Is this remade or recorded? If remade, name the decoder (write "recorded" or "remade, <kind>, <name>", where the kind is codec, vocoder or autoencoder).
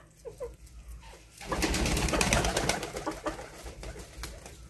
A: recorded